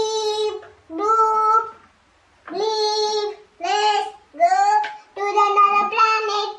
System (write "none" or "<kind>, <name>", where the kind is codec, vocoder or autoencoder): none